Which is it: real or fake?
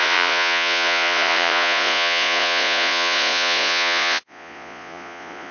fake